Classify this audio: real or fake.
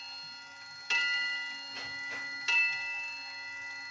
real